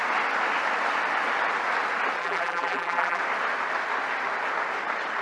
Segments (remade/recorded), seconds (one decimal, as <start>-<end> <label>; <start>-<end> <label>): 0.0-2.2 recorded; 2.2-3.2 remade; 3.2-5.2 recorded